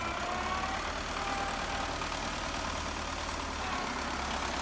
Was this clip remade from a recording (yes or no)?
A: no